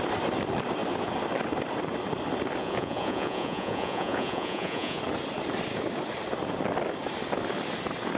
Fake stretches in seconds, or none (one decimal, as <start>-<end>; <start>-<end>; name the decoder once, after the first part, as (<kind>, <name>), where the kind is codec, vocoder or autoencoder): 2.6-5.0 (vocoder, Vocos)